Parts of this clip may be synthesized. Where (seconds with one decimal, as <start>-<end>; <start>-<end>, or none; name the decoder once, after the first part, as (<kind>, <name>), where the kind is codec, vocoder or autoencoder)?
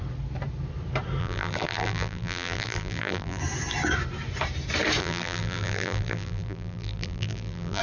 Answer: 1.2-3.4 (vocoder, BigVGAN v2); 5.0-7.8